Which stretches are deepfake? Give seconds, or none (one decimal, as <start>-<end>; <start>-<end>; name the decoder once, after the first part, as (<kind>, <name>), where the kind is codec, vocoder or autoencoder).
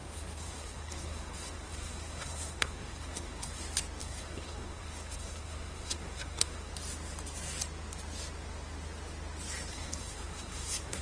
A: 0.0-3.6 (codec, SNAC); 4.0-6.7; 9.7-11.0